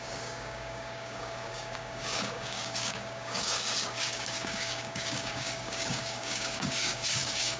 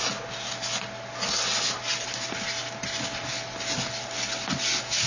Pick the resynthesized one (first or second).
first